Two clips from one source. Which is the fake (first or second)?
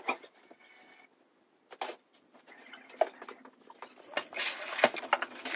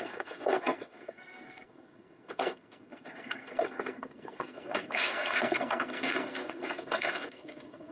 second